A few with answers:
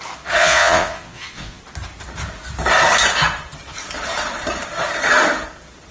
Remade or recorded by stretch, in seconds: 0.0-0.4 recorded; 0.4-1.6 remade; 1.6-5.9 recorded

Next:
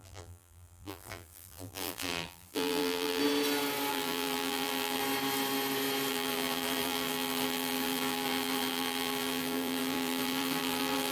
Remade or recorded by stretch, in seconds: 0.0-3.2 remade; 3.2-3.9 recorded; 3.9-5.0 remade; 5.0-6.1 recorded; 6.1-11.1 remade

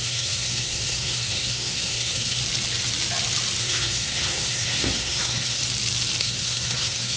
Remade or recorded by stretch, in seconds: 0.0-2.4 remade; 2.4-3.6 recorded; 3.6-5.6 remade; 5.6-6.2 recorded; 6.2-7.2 remade

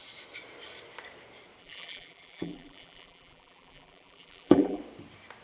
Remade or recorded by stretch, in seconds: 0.0-1.6 recorded; 1.6-4.8 remade; 4.8-5.4 recorded

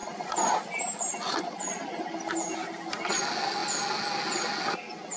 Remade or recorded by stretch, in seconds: 0.0-5.2 recorded

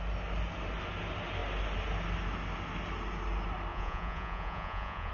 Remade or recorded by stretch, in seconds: 0.0-3.7 recorded; 3.7-5.1 remade